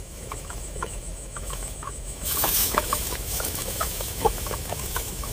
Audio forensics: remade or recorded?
remade